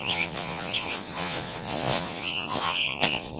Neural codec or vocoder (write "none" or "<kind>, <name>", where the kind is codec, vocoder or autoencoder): vocoder, Vocos